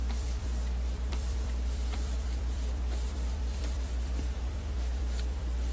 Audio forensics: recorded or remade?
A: remade